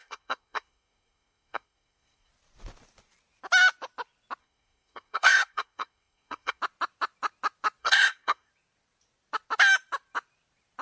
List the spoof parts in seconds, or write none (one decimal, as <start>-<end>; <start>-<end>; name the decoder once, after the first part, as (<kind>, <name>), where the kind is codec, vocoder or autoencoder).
0.0-2.3 (codec, SNAC); 4.4-6.6; 7.8-8.5